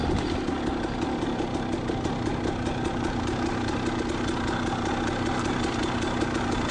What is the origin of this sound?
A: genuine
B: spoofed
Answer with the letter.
A